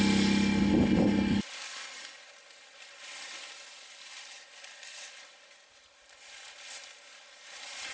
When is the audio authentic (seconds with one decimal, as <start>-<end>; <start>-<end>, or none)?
0.0-1.7; 2.2-7.9